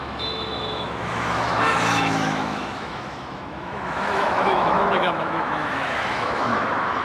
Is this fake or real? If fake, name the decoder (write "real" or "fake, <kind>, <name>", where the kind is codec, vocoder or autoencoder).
fake, autoencoder, DAC-VAE